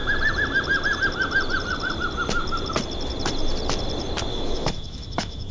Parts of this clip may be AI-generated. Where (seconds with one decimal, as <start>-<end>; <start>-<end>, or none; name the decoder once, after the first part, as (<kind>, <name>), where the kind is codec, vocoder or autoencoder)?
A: 4.3-5.5 (autoencoder, DAC-VAE)